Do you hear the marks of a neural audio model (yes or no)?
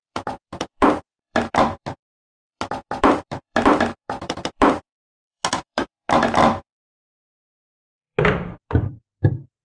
yes